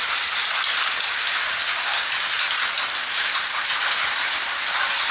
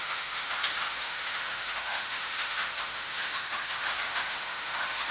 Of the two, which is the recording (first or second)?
first